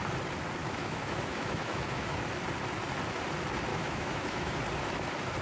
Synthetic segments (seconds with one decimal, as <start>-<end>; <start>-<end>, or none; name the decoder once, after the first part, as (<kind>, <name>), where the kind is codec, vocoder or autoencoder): 0.6-2.2 (autoencoder, DAC-VAE); 3.7-4.5